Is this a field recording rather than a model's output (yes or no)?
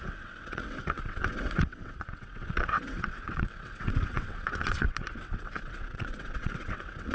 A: no